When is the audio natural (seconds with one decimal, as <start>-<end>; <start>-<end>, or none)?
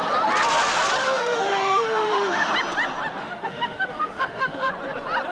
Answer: 0.0-1.0; 2.5-3.2; 4.7-5.3